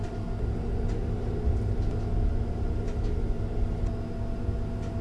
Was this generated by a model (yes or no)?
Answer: no